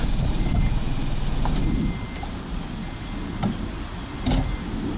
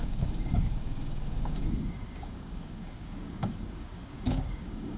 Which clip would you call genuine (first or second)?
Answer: first